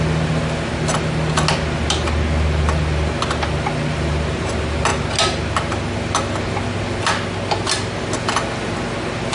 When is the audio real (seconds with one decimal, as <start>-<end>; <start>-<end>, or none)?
0.0-9.3